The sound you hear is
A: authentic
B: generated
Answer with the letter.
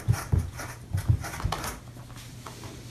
A